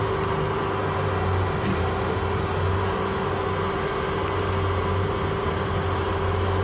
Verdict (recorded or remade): recorded